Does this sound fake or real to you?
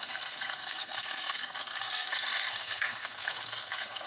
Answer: fake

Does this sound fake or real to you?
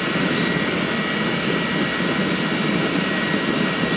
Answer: real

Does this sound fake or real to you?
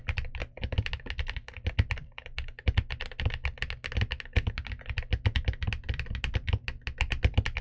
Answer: real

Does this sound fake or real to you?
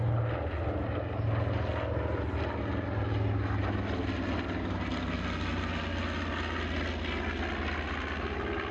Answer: real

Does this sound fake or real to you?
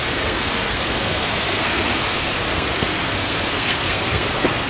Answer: fake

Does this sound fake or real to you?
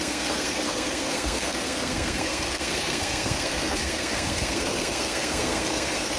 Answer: fake